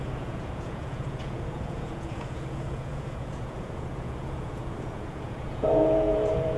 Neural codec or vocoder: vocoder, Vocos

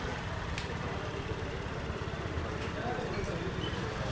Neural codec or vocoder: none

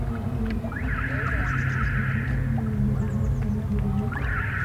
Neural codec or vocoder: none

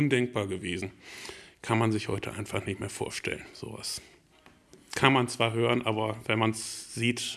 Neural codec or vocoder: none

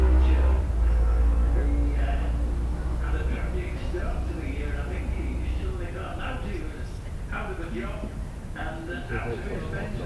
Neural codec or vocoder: none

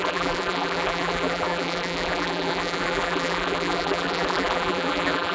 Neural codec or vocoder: vocoder, BigVGAN v2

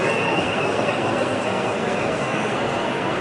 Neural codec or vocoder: codec, SNAC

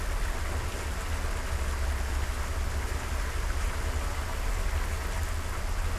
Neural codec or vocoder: none